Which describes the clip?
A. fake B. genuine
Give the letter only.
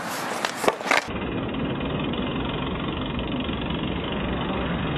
B